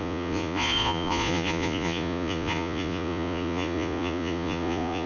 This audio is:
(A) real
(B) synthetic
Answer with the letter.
B